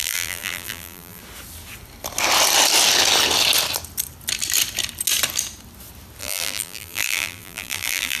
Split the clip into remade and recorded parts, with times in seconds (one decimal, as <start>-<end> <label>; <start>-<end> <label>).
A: 0.0-1.2 remade; 1.2-6.2 recorded; 6.2-8.2 remade